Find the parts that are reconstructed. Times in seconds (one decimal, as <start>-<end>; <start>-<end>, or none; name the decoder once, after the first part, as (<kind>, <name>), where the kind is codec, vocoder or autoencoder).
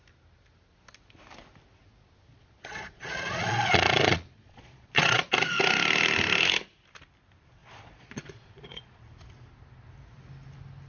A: 2.3-5.3 (vocoder, Vocos); 7.6-9.0